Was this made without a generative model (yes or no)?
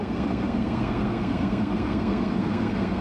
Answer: no